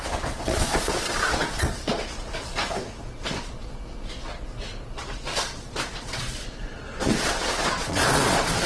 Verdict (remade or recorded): remade